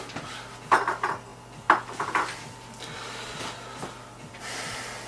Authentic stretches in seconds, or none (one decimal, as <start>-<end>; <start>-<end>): 0.0-5.1